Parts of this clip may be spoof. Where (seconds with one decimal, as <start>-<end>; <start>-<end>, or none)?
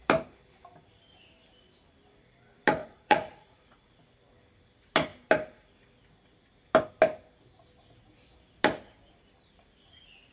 2.8-3.9